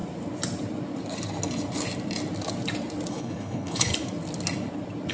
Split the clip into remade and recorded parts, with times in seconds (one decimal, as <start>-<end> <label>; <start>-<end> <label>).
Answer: 0.0-3.1 recorded; 3.1-3.9 remade; 3.9-5.1 recorded